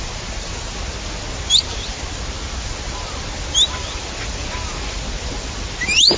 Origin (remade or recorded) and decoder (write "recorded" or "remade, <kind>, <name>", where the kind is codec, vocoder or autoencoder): recorded